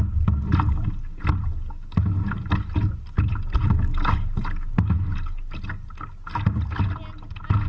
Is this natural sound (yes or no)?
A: yes